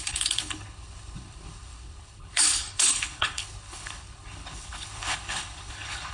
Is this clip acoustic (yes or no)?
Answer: no